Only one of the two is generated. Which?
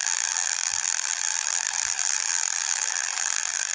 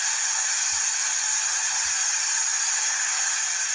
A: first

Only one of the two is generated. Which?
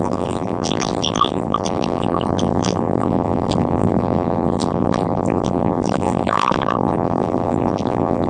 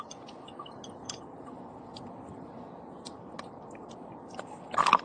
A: first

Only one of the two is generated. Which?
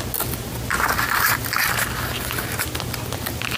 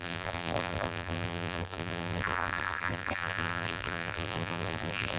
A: second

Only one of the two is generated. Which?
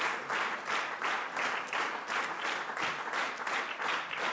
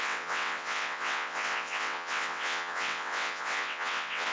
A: second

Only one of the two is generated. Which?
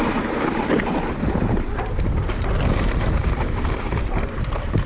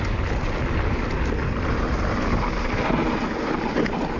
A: first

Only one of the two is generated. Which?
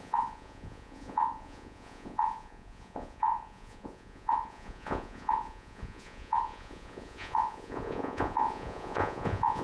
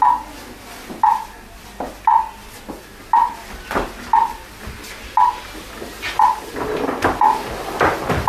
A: first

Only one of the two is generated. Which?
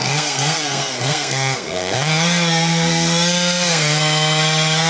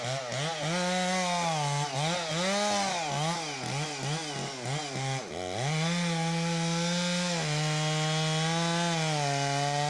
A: first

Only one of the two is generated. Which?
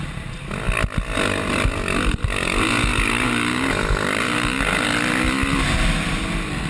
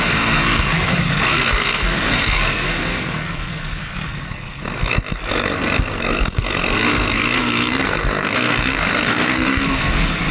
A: second